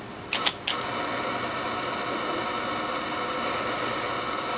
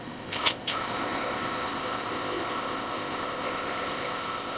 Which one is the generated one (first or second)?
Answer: second